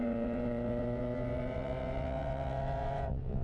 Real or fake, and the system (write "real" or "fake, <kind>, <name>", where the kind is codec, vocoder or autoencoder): fake, vocoder, WaveNeXt